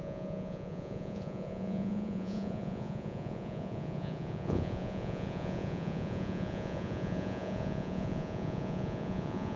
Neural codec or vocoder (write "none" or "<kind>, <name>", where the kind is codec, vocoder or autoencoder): vocoder, Vocos